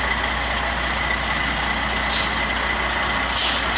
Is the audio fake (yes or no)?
no